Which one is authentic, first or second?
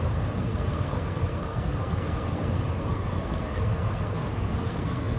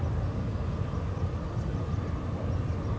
second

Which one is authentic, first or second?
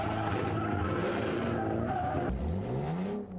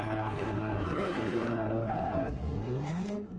first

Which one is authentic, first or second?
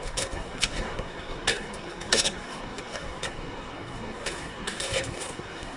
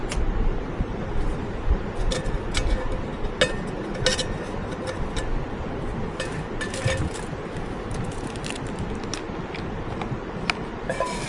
second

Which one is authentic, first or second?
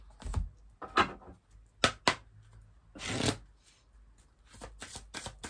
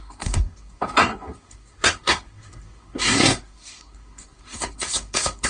first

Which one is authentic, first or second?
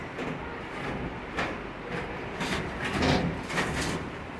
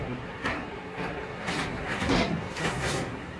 first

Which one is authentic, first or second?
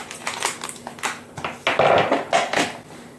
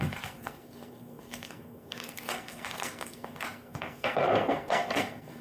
first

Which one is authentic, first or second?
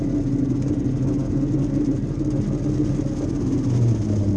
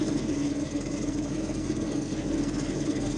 first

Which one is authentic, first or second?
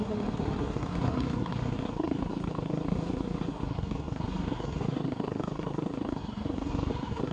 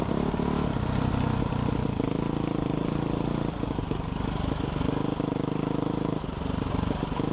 second